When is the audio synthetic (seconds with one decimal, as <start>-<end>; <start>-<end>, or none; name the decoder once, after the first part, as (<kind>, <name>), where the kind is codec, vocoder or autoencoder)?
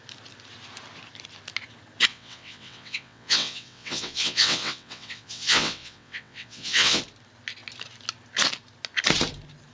2.1-7.0 (vocoder, WaveNeXt)